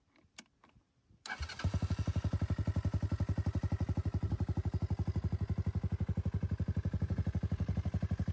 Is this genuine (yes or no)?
yes